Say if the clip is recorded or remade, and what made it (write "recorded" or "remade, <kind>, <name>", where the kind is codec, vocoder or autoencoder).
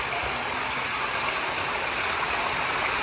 recorded